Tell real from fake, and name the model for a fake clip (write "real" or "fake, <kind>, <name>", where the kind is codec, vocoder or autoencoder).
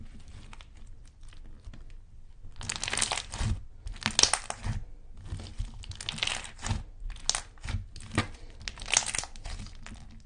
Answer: real